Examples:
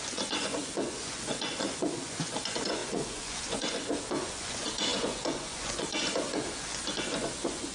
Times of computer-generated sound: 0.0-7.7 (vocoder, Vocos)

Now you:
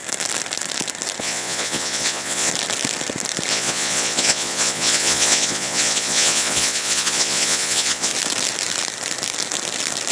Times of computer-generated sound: 1.2-2.5 (vocoder, Vocos); 3.5-8.1

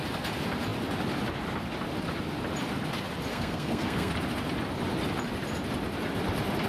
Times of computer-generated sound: 3.3-4.1 (codec, SNAC)

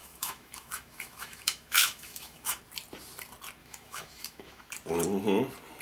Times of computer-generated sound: 0.0-2.6 (autoencoder, DAC-VAE); 3.6-4.7

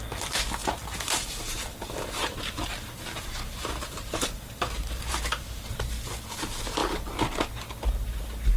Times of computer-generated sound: 0.6-5.7 (vocoder, BigVGAN v2)

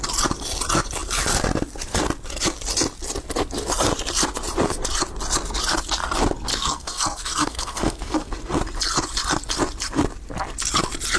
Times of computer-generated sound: 6.5-8.3 (codec, SNAC)

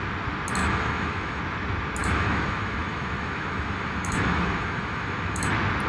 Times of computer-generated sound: 0.6-1.4 (autoencoder, DAC-VAE); 2.0-5.5

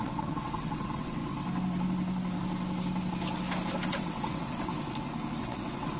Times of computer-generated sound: 0.0-1.2 (vocoder, WaveNeXt); 3.9-4.7; 5.4-6.0